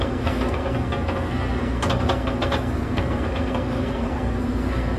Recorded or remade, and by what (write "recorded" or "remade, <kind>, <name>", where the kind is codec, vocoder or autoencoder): remade, codec, SNAC